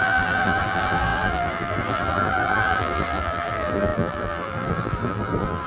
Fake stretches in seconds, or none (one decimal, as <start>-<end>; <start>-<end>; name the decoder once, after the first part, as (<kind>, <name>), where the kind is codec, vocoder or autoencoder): 0.0-5.7 (vocoder, BigVGAN v2)